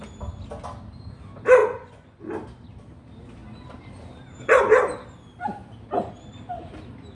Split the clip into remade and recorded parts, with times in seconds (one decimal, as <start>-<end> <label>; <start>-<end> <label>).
0.0-1.6 recorded; 1.6-2.2 remade; 2.2-7.1 recorded